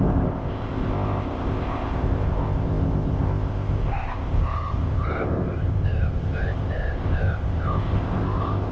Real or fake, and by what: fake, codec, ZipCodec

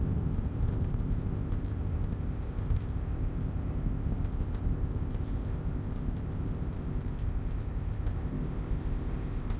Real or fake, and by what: fake, codec, ZipCodec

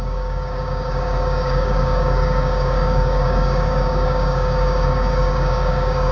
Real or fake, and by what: fake, codec, DAC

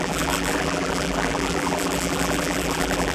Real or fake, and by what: fake, vocoder, BigVGAN v2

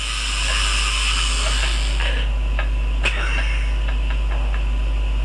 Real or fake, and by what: real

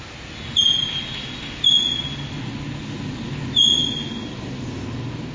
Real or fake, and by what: real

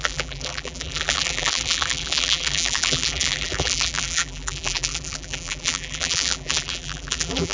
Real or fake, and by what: fake, vocoder, BigVGAN v2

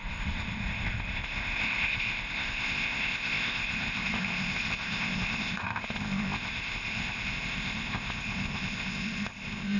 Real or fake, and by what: fake, codec, ZipCodec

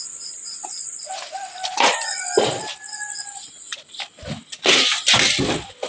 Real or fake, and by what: real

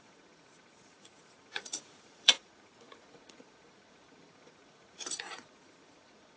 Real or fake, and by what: fake, vocoder, Vocos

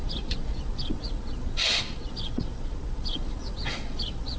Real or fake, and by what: fake, vocoder, Vocos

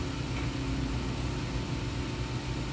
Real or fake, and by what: real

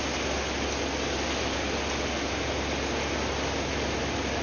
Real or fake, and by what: real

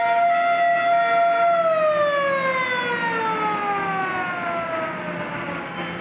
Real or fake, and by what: real